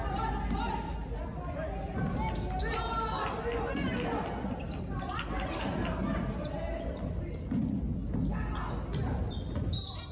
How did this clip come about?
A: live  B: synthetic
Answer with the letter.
A